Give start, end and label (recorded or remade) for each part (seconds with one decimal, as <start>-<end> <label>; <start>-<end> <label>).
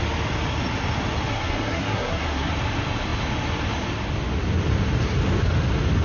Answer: 0.0-1.3 recorded; 1.3-2.5 remade; 2.5-6.0 recorded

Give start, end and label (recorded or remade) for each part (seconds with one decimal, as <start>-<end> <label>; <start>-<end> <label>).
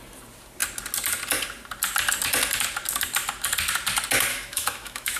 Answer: 0.0-4.3 recorded; 4.3-5.2 remade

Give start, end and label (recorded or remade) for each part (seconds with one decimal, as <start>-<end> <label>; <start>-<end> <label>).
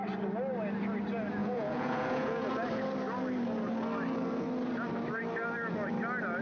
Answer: 0.0-1.4 recorded; 1.4-2.5 remade; 2.5-6.4 recorded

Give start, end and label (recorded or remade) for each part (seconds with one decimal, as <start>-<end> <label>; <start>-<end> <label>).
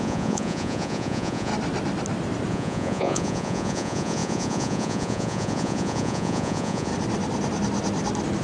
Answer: 0.0-1.5 remade; 1.5-2.5 recorded; 2.5-6.9 remade; 6.9-8.4 recorded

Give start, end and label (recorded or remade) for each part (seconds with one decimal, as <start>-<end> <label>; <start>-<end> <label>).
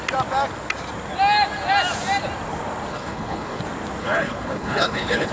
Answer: 0.0-2.9 recorded; 2.9-3.6 remade; 3.6-4.0 recorded; 4.0-5.3 remade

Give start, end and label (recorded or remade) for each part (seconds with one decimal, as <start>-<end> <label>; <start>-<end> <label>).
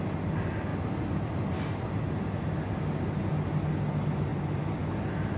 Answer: 0.0-5.4 recorded